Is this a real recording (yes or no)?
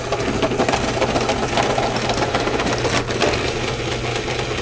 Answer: yes